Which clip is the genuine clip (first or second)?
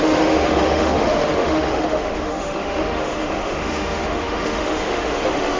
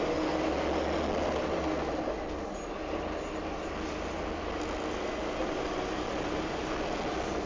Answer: second